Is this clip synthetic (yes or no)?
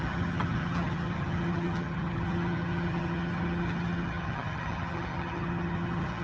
yes